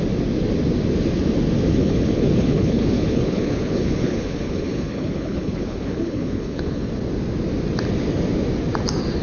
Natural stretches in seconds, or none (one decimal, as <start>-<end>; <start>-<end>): 0.0-1.7; 6.9-9.2